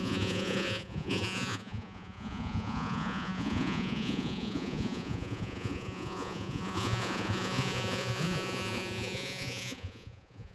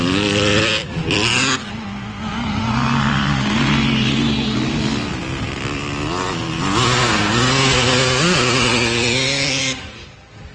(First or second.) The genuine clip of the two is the second